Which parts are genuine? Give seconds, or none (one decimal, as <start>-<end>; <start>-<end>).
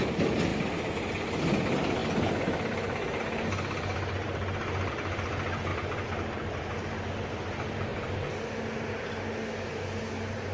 0.0-2.0; 4.9-5.7; 6.6-10.5